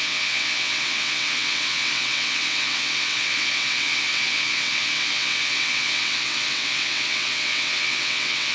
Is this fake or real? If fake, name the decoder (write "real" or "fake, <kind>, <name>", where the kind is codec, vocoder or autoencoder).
fake, vocoder, WaveNeXt